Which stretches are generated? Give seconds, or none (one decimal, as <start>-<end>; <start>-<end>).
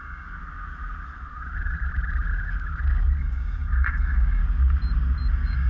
0.0-0.4; 3.2-4.4; 5.3-5.7